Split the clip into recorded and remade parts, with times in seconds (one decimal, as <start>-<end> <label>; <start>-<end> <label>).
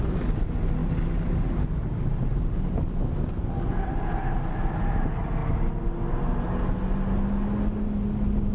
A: 0.0-8.5 recorded